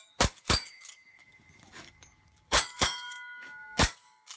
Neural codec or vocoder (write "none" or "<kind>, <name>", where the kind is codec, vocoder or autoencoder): codec, DAC